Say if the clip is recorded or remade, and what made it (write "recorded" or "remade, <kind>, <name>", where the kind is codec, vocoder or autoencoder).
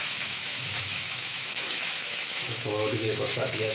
remade, autoencoder, DAC-VAE